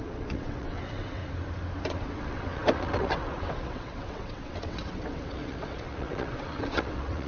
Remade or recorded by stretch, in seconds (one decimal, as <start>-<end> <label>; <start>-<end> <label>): 0.0-1.2 remade; 1.2-1.9 recorded; 1.9-7.3 remade